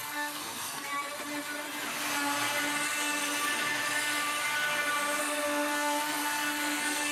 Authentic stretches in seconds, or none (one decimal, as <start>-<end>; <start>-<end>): 0.9-5.2

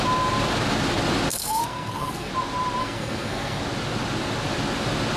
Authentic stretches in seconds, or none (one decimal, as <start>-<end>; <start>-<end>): 0.0-1.3; 2.3-2.8; 3.6-5.2

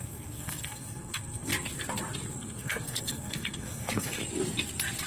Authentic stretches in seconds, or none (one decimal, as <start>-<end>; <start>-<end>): 1.5-2.3; 4.2-5.1

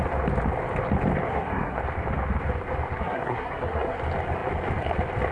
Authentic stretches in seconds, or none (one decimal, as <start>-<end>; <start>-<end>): 0.0-1.3; 1.8-3.0; 4.0-5.3